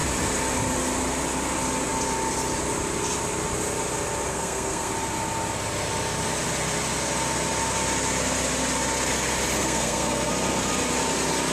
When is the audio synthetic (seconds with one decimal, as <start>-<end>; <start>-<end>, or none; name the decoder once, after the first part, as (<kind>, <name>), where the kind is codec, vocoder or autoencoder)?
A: 4.3-4.9 (codec, SNAC); 9.6-10.3